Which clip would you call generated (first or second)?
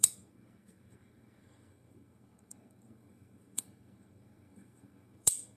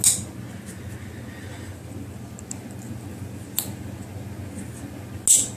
first